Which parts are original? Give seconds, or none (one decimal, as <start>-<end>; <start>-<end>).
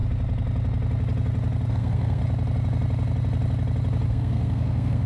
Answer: 0.0-1.7; 2.2-4.1